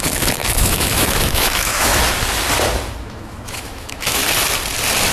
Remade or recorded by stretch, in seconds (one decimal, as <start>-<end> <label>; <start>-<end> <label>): 0.0-1.9 remade; 1.9-3.0 recorded; 3.0-4.2 remade; 4.2-5.1 recorded